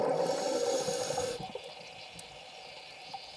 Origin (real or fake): real